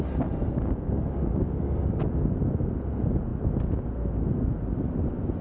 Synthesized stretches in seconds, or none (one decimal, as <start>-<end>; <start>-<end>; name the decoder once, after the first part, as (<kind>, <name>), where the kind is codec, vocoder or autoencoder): 0.5-2.0 (codec, DAC)